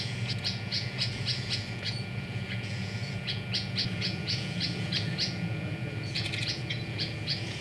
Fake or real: fake